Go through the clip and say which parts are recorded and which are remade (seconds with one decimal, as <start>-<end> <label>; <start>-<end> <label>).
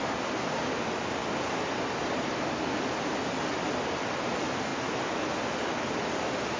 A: 0.0-6.6 recorded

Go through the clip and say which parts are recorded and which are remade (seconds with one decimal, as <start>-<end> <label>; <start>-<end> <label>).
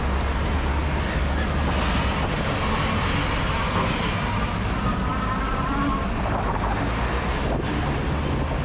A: 0.0-8.6 recorded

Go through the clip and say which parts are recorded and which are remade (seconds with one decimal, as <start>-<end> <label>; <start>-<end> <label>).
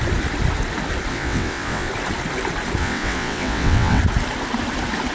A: 0.0-1.1 recorded; 1.1-1.9 remade; 1.9-2.8 recorded; 2.8-4.0 remade; 4.0-5.1 recorded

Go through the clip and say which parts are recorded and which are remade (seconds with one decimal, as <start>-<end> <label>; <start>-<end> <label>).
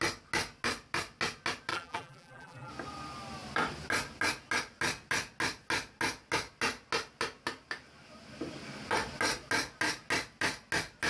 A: 0.0-1.7 recorded; 1.7-2.7 remade; 2.7-11.1 recorded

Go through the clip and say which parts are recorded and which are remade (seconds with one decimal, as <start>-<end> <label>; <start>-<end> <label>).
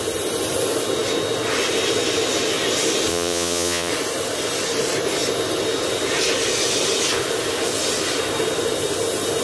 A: 0.0-3.1 recorded; 3.1-3.9 remade; 3.9-9.4 recorded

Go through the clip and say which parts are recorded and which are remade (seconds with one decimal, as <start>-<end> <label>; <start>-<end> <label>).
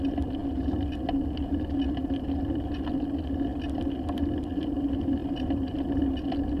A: 0.0-6.6 recorded